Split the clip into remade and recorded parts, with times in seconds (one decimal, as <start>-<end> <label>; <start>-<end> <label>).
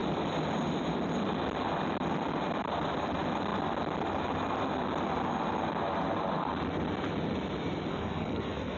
0.0-7.9 recorded; 7.9-8.8 remade